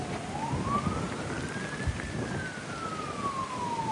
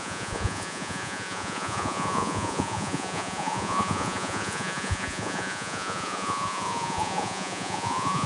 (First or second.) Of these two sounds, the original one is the first